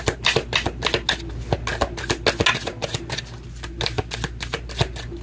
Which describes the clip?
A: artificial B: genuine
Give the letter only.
B